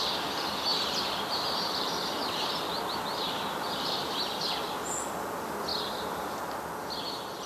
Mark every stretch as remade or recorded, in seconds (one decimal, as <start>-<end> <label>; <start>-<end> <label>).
0.0-0.7 recorded; 0.7-4.2 remade; 4.2-7.5 recorded